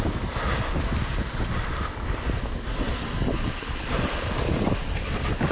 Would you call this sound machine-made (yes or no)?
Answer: no